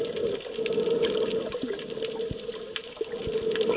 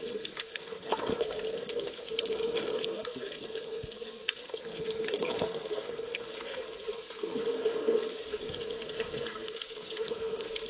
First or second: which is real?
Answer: first